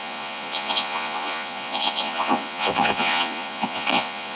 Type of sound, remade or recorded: remade